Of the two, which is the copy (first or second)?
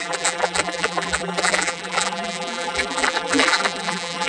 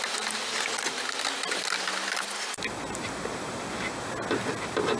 first